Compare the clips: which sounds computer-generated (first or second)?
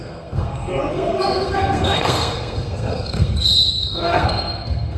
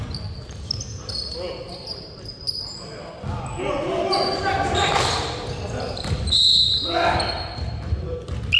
first